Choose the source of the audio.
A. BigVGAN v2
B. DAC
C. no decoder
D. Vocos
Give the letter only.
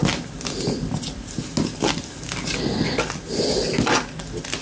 C